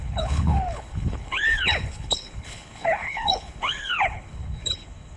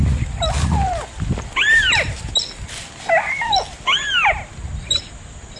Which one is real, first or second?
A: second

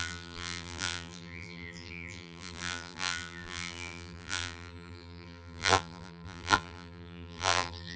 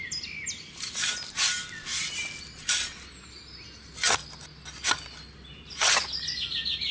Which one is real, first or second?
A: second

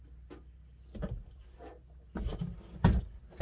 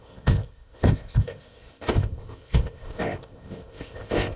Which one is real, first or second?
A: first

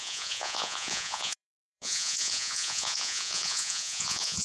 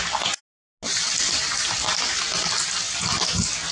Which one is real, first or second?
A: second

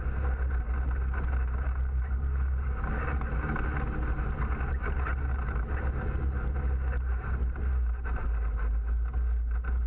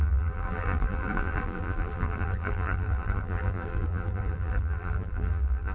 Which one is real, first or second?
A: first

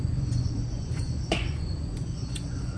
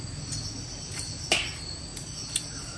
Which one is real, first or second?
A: second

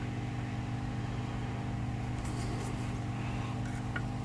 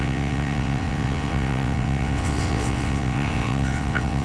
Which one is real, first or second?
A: first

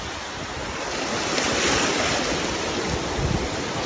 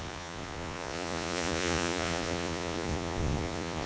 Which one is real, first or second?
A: first